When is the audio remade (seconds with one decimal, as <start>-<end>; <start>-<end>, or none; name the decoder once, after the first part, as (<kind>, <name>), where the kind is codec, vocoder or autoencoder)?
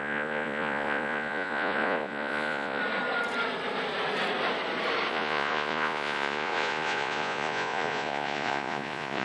0.0-2.8 (vocoder, Vocos); 5.1-9.2